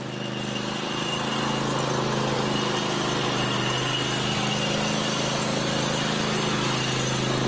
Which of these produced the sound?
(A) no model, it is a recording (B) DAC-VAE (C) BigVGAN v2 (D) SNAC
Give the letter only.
A